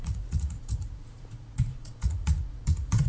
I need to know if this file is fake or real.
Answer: fake